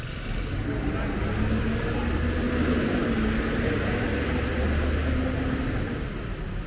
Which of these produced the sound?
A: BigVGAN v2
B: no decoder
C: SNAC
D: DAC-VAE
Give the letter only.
B